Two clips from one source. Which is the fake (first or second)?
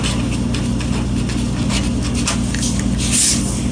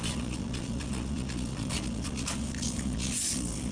second